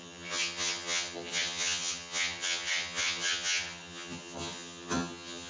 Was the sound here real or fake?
fake